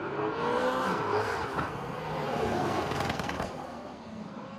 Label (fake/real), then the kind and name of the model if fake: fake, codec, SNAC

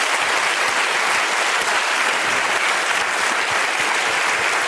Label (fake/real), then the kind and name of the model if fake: real